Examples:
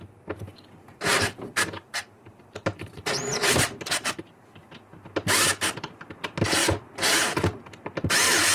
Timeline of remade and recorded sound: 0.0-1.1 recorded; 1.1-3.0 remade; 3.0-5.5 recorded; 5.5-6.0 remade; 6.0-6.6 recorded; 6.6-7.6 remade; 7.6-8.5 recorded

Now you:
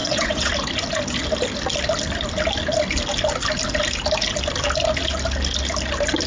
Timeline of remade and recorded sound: 0.0-0.5 remade; 0.5-6.3 recorded

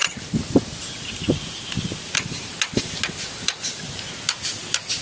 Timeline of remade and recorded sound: 0.0-5.0 recorded

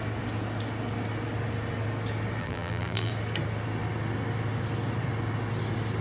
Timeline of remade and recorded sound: 0.0-2.4 recorded; 2.4-3.1 remade; 3.1-6.0 recorded

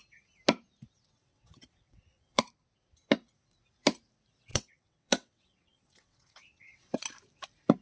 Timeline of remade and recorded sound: 0.0-1.2 recorded; 1.2-2.4 remade; 2.4-4.5 recorded; 4.5-7.0 remade; 7.0-7.8 recorded

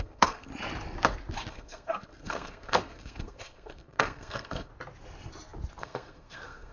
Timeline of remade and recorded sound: 0.0-0.5 remade; 0.5-1.5 recorded; 1.5-4.7 remade; 4.7-5.8 recorded; 5.8-6.7 remade